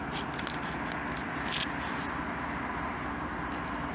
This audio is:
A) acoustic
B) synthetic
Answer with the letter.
A